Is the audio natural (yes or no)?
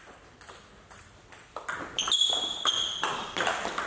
yes